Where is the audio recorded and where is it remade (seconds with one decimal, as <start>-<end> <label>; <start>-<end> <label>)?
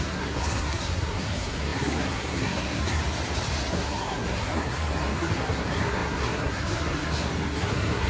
0.0-3.0 remade; 3.0-3.7 recorded; 3.7-8.1 remade